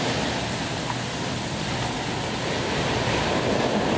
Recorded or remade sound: recorded